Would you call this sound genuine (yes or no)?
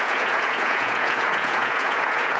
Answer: no